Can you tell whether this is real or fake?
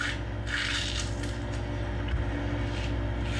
real